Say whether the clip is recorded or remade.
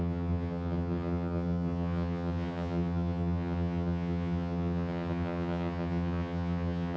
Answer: remade